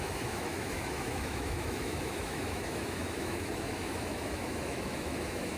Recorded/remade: remade